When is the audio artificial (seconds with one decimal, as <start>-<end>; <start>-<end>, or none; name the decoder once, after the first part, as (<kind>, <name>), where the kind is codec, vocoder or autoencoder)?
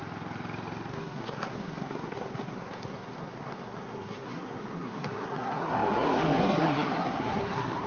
0.9-7.9 (codec, SNAC)